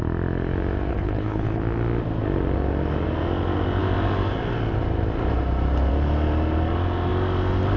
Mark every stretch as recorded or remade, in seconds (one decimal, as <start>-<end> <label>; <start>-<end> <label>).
0.0-0.9 recorded; 0.9-1.6 remade; 1.6-7.8 recorded